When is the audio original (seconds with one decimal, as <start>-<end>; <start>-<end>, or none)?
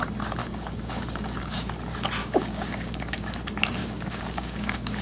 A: 0.0-0.4; 1.7-2.2; 3.3-3.8